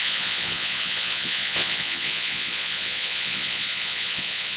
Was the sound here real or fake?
fake